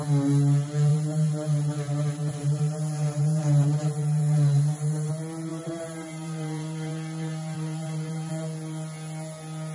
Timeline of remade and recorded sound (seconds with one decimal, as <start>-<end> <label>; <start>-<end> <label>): 0.0-0.9 recorded; 0.9-5.1 remade; 5.1-5.5 recorded; 5.5-8.3 remade; 8.3-9.7 recorded